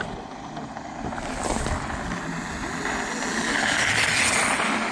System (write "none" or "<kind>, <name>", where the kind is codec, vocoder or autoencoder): none